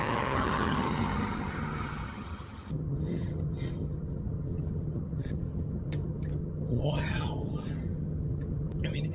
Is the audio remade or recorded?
remade